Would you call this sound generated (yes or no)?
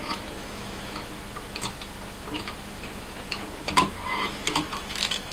yes